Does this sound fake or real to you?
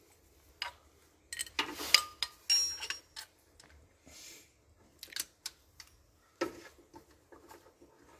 real